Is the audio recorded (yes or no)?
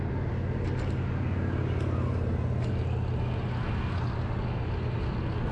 yes